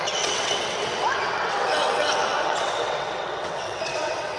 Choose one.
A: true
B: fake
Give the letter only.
B